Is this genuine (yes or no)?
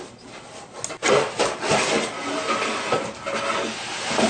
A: yes